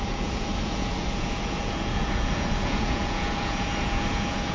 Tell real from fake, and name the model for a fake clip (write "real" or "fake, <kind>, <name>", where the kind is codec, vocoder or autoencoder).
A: fake, vocoder, Vocos